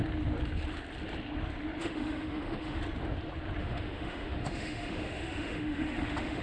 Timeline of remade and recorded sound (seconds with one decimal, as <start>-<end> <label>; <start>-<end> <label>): 0.0-1.8 recorded; 1.8-2.8 remade; 2.8-3.6 recorded; 3.6-6.4 remade